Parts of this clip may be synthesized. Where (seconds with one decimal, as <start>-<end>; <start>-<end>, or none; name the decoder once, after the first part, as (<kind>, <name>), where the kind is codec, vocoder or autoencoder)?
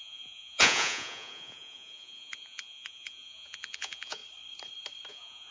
0.0-4.2 (vocoder, Vocos); 5.1-5.5